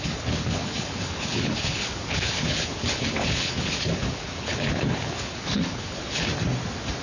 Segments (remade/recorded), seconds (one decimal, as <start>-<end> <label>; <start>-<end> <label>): 0.0-6.3 remade; 6.3-7.0 recorded